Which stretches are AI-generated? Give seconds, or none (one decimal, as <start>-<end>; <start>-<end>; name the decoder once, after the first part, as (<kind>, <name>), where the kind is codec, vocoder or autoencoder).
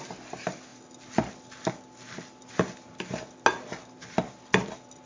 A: none